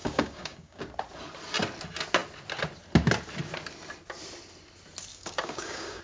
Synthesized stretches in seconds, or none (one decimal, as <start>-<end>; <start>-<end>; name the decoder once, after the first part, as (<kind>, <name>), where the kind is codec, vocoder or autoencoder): 0.0-0.8 (codec, DAC); 5.1-6.0

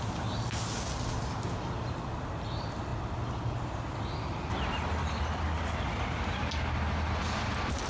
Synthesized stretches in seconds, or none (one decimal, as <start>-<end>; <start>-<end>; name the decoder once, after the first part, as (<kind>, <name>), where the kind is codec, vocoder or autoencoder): none

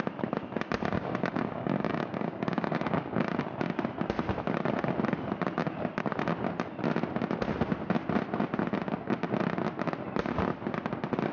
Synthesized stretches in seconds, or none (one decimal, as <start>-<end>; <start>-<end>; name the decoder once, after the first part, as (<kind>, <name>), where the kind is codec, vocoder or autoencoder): 0.9-3.3 (codec, DAC)

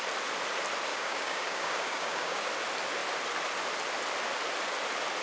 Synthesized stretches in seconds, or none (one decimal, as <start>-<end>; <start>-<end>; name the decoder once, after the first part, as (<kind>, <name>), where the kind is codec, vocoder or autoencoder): 0.9-2.5 (codec, DAC)

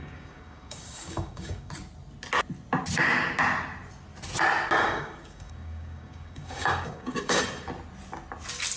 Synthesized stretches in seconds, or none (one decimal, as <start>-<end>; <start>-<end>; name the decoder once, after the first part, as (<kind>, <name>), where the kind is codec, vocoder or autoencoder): 0.0-1.7 (codec, DAC); 4.8-7.4

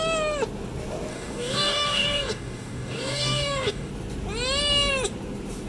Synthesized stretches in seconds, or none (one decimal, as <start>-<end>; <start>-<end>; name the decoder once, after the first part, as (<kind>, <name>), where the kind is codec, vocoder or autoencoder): 1.1-3.9 (codec, DAC)

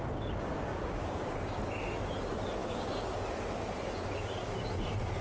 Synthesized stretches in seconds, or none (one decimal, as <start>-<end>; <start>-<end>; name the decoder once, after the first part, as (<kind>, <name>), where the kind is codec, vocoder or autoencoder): 0.7-1.6 (codec, DAC); 2.6-3.2